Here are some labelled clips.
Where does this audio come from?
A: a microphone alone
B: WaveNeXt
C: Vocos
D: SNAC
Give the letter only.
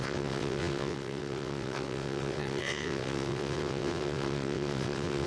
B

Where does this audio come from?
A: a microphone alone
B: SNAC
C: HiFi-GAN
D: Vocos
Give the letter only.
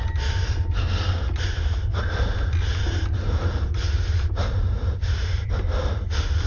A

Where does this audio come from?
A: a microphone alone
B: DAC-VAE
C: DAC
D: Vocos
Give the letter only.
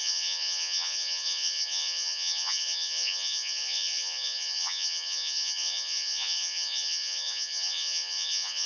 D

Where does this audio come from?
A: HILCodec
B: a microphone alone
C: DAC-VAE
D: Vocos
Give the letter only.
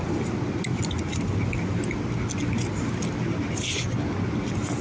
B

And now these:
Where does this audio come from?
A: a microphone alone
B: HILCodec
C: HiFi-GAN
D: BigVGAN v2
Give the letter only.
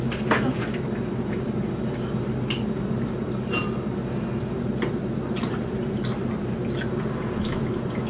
A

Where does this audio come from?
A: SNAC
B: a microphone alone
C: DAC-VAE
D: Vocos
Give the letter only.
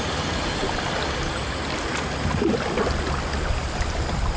B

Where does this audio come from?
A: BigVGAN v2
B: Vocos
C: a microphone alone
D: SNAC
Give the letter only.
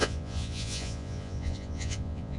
B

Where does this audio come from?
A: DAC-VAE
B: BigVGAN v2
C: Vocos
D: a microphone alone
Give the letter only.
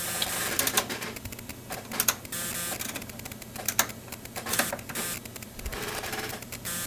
D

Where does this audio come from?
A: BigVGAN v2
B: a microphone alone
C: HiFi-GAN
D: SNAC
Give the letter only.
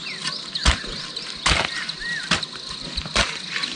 B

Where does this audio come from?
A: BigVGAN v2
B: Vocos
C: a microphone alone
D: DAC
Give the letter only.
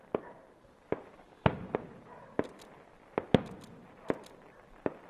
A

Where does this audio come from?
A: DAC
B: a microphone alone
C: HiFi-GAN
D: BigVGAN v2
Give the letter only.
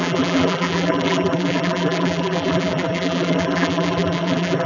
D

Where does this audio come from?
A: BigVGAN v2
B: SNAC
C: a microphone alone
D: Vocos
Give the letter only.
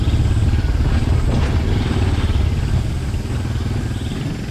C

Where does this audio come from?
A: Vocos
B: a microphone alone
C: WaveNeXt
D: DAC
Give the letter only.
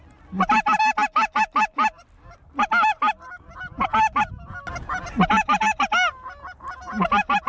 B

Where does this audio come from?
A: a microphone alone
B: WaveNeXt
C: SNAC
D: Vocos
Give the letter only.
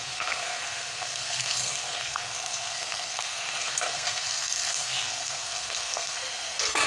C